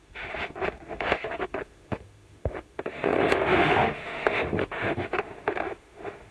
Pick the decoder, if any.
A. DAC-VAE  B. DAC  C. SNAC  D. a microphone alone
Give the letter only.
A